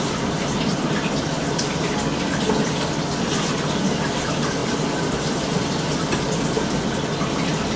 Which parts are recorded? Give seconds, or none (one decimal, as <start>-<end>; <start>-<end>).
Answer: 1.7-4.0